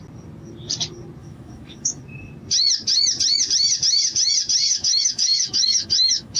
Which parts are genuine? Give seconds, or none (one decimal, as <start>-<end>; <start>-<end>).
0.0-1.2; 2.0-4.7